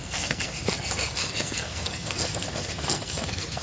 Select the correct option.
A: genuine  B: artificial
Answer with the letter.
B